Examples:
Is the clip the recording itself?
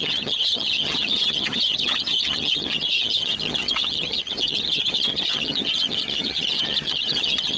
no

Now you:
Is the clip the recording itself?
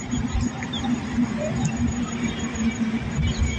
yes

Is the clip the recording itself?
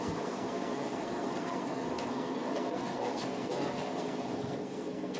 no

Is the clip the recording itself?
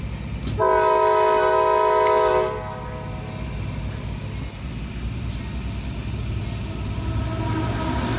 yes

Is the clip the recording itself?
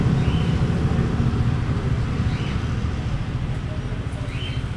yes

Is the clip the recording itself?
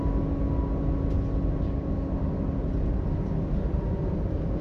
yes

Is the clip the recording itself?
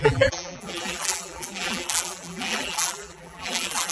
no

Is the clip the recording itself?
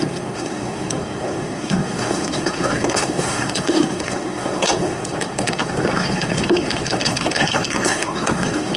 no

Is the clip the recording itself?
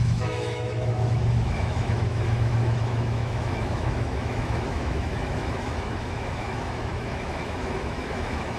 no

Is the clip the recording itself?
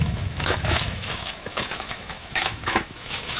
no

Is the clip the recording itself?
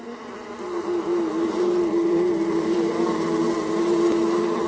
yes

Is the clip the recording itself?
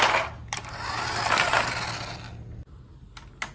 yes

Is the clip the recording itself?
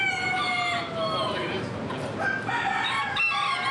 yes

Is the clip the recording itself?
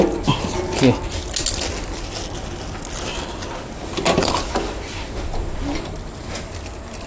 yes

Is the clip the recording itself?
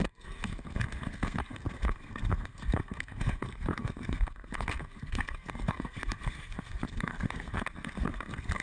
no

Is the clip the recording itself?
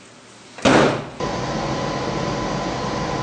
yes